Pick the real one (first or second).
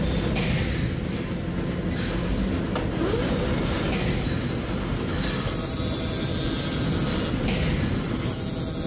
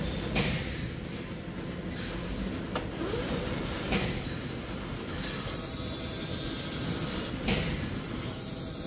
first